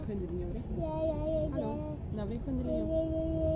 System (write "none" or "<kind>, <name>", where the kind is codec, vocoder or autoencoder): none